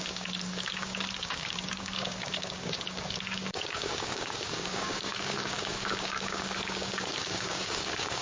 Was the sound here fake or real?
fake